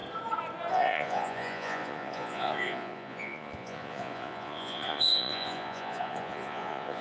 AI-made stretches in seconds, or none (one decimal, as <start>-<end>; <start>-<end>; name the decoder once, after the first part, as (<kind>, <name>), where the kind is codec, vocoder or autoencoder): 0.7-7.0 (vocoder, Vocos)